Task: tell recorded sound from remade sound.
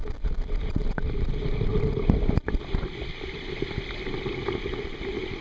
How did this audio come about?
recorded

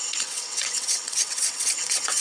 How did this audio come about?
remade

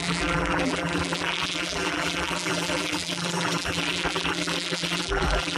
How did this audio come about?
remade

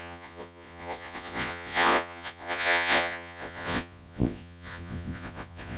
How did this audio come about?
remade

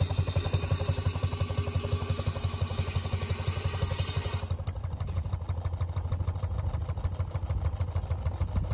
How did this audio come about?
recorded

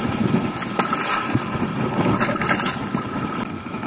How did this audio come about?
recorded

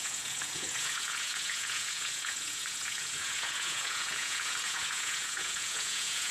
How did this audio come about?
remade